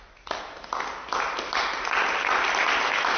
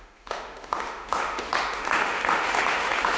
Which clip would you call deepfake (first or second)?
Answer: second